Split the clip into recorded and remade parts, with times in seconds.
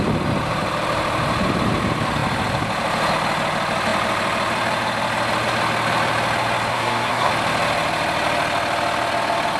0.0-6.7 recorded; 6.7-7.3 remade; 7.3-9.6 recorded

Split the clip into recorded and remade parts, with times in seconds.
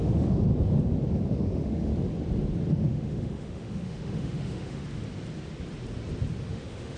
0.0-0.5 remade; 0.5-1.1 recorded; 1.1-1.9 remade; 1.9-2.7 recorded; 2.7-4.8 remade; 4.8-6.5 recorded; 6.5-7.0 remade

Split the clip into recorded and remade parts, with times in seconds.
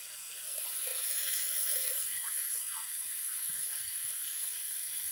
0.0-5.1 remade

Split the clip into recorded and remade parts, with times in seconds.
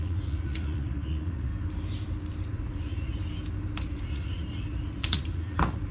0.0-1.5 remade; 1.5-2.5 recorded; 2.5-3.2 remade; 3.2-3.8 recorded; 3.8-5.9 remade